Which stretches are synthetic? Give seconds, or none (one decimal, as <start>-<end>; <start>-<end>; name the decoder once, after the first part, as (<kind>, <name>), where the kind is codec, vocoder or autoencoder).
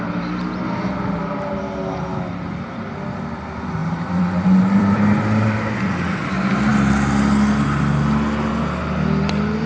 3.8-5.7 (vocoder, BigVGAN v2)